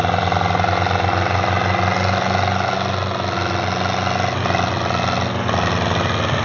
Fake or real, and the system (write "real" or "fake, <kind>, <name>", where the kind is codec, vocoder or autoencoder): real